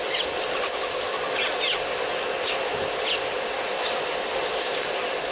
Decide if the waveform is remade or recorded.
recorded